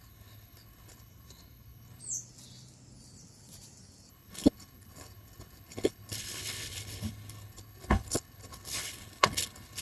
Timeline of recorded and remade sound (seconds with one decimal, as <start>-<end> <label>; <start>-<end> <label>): 0.0-2.0 remade; 2.0-4.1 recorded; 4.1-9.8 remade